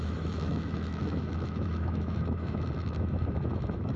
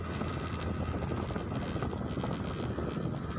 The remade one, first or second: first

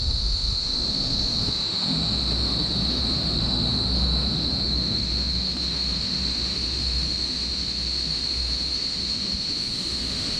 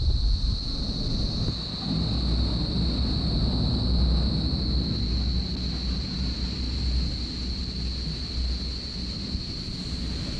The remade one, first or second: first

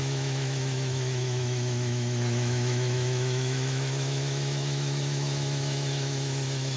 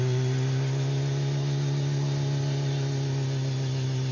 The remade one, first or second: first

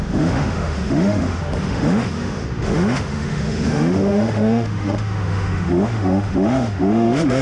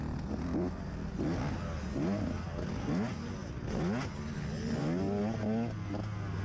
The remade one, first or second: first